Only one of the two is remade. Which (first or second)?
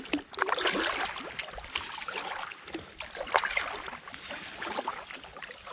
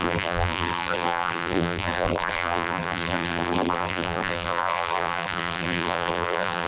second